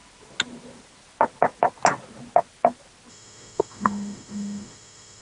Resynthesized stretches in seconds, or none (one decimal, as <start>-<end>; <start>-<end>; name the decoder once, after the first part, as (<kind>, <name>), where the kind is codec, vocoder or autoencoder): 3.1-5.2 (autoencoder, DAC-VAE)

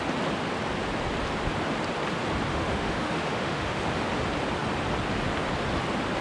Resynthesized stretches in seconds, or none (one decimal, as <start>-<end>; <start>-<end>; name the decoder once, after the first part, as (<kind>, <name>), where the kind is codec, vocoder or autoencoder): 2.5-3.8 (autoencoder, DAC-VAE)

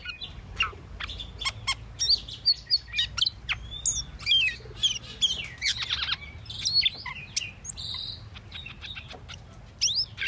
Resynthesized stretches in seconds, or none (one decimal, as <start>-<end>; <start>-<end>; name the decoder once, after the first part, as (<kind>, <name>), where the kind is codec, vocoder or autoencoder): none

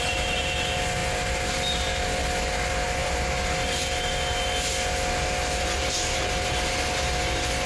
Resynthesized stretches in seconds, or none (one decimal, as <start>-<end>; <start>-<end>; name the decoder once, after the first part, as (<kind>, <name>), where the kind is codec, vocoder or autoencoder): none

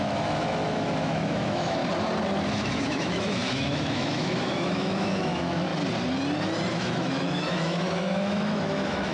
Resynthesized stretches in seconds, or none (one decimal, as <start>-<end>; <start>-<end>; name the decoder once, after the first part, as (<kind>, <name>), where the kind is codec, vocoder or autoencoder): 0.0-1.8 (autoencoder, DAC-VAE); 2.5-5.7; 6.7-9.1

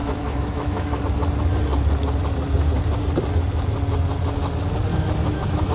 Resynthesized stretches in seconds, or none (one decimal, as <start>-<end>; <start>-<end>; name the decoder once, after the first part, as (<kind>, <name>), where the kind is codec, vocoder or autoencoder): 0.0-1.0 (autoencoder, DAC-VAE); 4.9-5.7

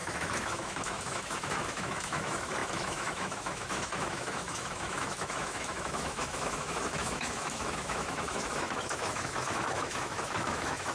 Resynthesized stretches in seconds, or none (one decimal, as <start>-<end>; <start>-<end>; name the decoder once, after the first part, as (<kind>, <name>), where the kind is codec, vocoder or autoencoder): 0.0-10.9 (autoencoder, DAC-VAE)